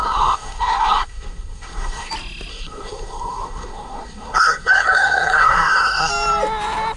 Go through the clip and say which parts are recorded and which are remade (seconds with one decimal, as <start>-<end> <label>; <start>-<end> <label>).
0.0-2.1 remade; 2.1-2.5 recorded; 2.5-6.1 remade; 6.1-7.0 recorded